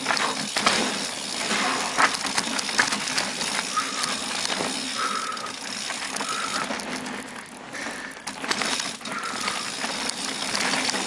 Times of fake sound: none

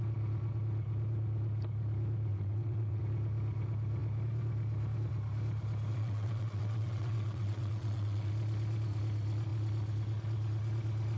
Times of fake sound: 2.3-3.0 (vocoder, WaveNeXt); 5.9-8.3

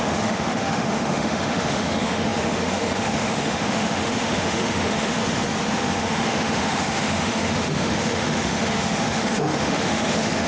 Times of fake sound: 0.0-5.2 (autoencoder, DAC-VAE); 6.0-10.5

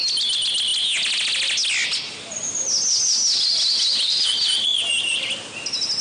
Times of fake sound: none

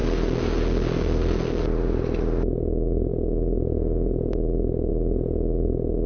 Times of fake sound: none